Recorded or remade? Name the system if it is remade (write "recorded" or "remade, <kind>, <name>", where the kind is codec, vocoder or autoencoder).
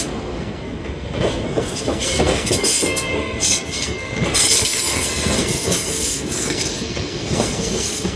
remade, codec, SNAC